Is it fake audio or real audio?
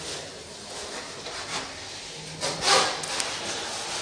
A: real